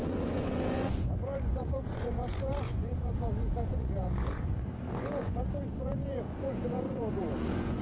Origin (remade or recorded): remade